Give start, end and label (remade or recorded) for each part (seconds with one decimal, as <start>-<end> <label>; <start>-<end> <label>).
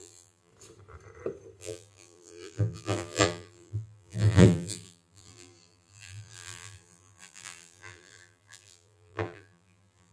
0.0-0.5 remade; 0.5-1.6 recorded; 1.6-10.1 remade